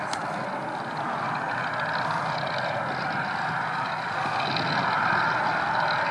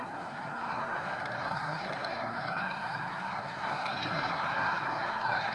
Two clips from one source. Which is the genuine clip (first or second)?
first